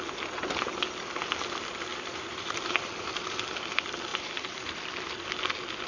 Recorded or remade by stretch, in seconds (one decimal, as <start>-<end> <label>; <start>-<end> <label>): 0.0-1.9 recorded; 1.9-3.6 remade; 3.6-4.1 recorded; 4.1-4.9 remade; 4.9-5.9 recorded

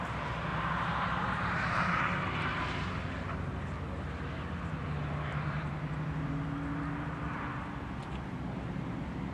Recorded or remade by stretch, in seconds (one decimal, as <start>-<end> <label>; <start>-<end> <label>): 0.0-0.5 recorded; 0.5-2.0 remade; 2.0-5.3 recorded; 5.3-6.3 remade; 6.3-9.3 recorded

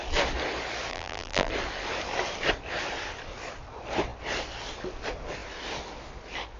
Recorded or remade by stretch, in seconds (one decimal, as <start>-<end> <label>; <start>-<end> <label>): 0.0-0.9 recorded; 0.9-1.5 remade; 1.5-6.6 recorded

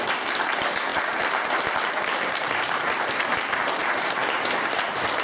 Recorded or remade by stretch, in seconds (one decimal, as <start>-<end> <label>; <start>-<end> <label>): 0.0-5.2 remade

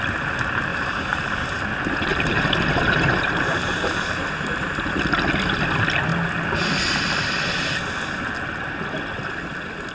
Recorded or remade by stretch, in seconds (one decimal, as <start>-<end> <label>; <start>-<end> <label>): 0.0-0.7 recorded; 0.7-1.6 remade; 1.6-2.1 recorded; 2.1-4.7 remade; 4.7-9.9 recorded

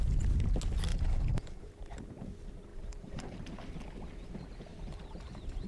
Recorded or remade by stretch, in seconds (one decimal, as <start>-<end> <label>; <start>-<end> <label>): 0.0-0.9 recorded; 0.9-1.7 remade; 1.7-2.7 recorded; 2.7-3.4 remade; 3.4-4.7 recorded; 4.7-5.7 remade